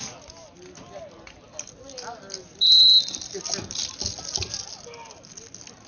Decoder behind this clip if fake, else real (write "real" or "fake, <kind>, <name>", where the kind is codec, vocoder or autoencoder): real